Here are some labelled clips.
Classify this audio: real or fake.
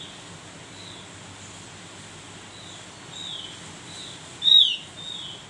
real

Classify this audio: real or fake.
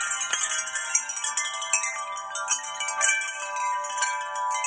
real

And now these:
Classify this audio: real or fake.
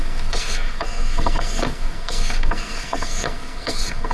fake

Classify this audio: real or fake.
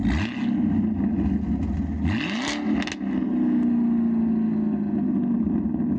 real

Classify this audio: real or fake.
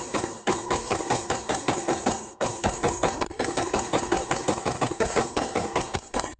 fake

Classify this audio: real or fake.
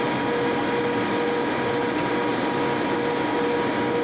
real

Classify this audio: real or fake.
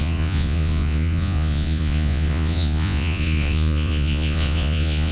fake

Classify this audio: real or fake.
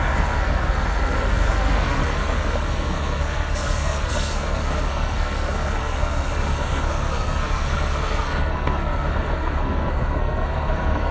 fake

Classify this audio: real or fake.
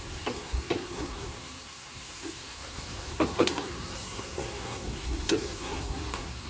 fake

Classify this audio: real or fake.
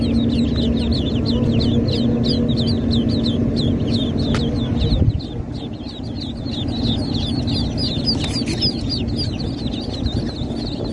real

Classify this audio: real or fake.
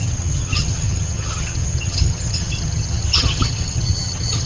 fake